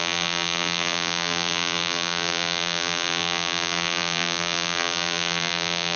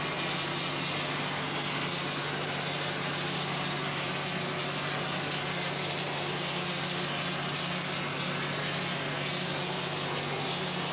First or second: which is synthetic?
first